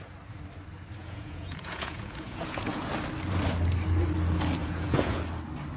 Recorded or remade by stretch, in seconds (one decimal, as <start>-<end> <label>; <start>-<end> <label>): 0.0-1.0 recorded; 1.0-2.9 remade; 2.9-4.6 recorded; 4.6-5.2 remade; 5.2-5.8 recorded